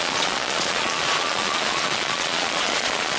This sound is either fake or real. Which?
fake